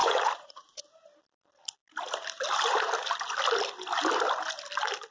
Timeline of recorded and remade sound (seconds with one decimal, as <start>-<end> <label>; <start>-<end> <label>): 0.0-0.8 remade; 0.8-5.1 recorded